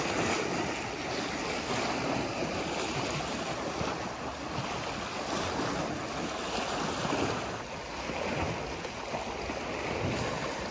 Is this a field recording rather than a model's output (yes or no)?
yes